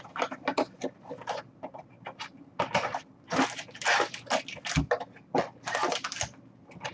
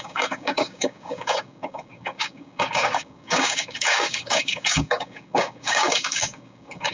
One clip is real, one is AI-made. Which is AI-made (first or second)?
second